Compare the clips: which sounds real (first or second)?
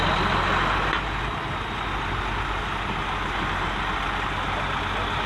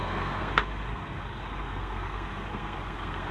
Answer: first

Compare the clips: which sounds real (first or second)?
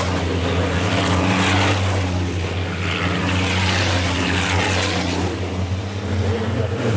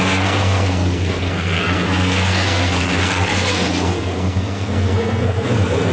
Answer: first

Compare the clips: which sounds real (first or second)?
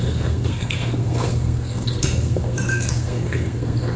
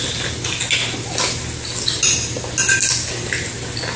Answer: second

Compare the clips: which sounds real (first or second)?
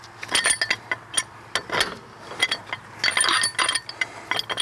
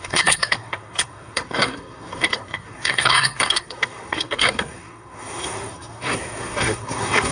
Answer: first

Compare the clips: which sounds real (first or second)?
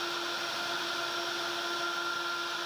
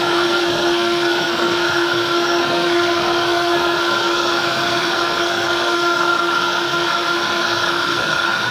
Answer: first